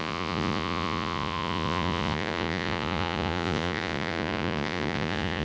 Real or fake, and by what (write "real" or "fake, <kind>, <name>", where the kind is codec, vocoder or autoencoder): fake, vocoder, Vocos